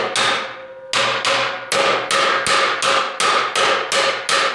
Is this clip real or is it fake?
real